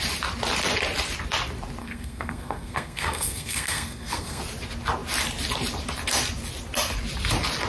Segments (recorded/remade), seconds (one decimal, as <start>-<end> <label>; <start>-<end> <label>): 0.0-1.8 recorded; 1.8-4.4 remade; 4.4-7.7 recorded